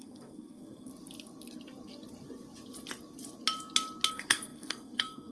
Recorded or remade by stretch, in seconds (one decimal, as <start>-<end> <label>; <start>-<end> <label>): 0.0-0.9 remade; 0.9-4.1 recorded; 4.1-5.3 remade